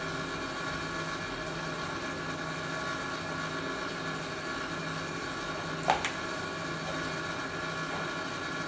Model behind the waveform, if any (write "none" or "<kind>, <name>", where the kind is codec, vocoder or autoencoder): none